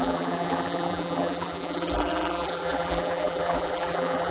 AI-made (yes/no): yes